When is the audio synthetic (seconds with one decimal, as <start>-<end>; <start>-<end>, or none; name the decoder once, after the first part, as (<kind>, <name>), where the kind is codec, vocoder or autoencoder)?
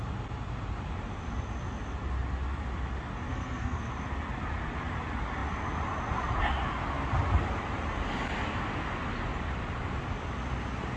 3.3-3.9 (codec, SNAC)